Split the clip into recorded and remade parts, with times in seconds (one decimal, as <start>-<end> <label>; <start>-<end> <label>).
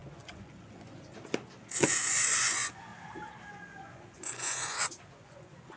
0.0-1.1 remade; 1.1-1.6 recorded; 1.6-2.9 remade; 2.9-3.5 recorded; 3.5-5.8 remade